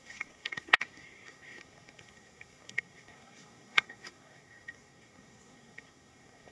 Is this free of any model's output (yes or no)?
no